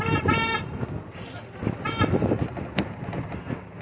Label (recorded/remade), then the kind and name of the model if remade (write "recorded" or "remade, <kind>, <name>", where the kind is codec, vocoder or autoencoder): recorded